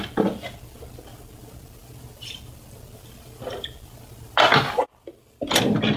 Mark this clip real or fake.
real